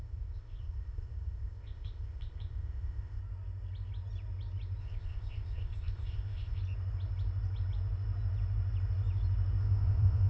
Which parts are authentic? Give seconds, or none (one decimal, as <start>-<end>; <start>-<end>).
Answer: 3.2-4.8; 6.6-9.6